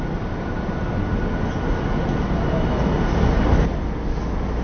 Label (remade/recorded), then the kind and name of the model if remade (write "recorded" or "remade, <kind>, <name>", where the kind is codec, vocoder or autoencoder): recorded